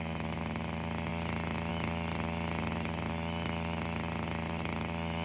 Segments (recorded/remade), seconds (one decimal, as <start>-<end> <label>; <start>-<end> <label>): 0.0-5.2 recorded